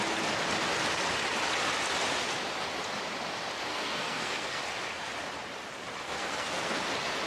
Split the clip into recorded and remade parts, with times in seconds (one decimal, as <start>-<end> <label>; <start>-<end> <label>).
0.0-3.7 recorded; 3.7-4.6 remade; 4.6-6.0 recorded; 6.0-6.8 remade; 6.8-7.3 recorded